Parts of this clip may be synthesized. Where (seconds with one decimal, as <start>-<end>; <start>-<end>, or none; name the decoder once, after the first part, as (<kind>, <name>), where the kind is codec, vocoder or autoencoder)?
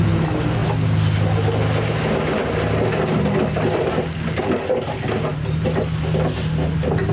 none